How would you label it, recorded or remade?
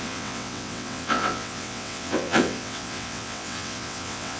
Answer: remade